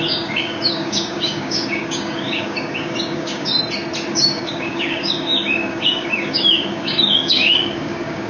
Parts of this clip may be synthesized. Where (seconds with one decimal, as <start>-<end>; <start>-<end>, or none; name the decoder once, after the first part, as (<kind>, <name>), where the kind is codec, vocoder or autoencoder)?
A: 0.0-3.5 (codec, DAC); 4.1-8.3

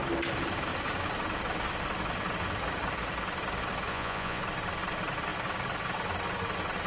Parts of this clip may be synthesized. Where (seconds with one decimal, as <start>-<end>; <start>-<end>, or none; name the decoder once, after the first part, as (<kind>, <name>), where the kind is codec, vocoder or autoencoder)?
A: 3.9-4.4 (vocoder, Vocos)

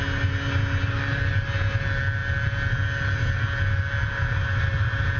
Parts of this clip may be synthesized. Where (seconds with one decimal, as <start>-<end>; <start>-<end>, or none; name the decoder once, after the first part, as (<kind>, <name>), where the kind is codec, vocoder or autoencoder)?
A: none

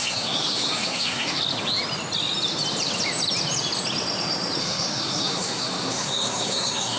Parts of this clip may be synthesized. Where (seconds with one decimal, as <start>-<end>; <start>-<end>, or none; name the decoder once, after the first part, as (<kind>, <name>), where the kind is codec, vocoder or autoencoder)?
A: 0.0-1.4 (codec, SNAC); 4.6-7.0

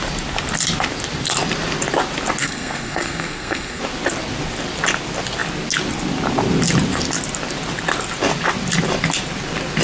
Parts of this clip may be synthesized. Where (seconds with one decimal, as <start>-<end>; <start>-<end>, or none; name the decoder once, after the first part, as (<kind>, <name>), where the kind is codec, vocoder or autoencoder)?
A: 2.4-3.8 (codec, SNAC)

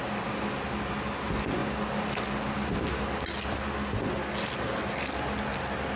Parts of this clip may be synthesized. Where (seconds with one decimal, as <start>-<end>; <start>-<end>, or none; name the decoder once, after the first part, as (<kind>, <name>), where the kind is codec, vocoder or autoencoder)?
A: none